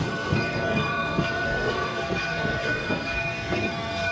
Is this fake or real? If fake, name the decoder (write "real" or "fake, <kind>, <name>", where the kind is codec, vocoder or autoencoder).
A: fake, codec, SNAC